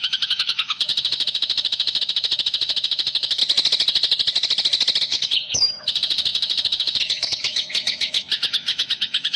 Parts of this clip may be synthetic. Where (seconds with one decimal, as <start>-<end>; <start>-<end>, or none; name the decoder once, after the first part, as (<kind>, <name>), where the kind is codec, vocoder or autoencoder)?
0.0-3.4 (autoencoder, DAC-VAE); 5.0-9.4